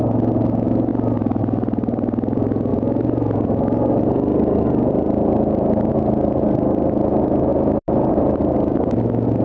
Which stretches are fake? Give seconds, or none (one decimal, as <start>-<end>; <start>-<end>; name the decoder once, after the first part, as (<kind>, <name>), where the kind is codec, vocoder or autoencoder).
none